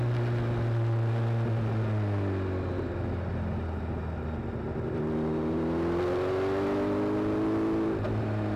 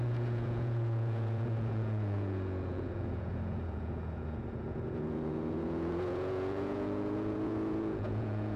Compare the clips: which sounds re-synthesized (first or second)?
second